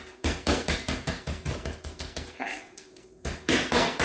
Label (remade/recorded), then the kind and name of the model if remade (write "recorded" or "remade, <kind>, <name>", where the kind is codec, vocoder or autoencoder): remade, codec, SNAC